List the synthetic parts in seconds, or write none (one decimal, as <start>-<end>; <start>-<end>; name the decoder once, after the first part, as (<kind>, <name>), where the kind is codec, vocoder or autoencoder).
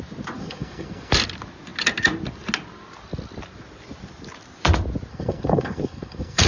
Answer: 0.4-1.1 (codec, SNAC); 5.1-6.5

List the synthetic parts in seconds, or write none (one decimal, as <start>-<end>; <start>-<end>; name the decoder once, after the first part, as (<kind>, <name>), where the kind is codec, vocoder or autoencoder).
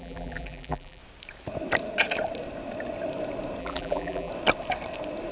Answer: 0.0-1.0 (vocoder, BigVGAN v2); 3.6-4.3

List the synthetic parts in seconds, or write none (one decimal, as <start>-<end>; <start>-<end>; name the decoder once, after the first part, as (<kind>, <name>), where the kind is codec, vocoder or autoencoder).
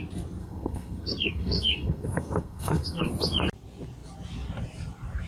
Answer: 0.4-3.1 (codec, SNAC)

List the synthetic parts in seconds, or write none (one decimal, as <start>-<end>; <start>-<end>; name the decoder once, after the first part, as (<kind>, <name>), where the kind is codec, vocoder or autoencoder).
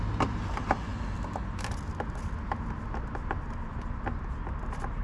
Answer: none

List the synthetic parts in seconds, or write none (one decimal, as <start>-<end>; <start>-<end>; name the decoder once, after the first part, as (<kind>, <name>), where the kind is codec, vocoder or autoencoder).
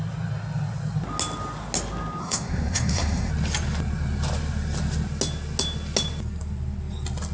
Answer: 2.2-3.3 (codec, SNAC)